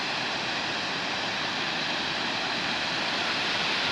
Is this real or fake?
real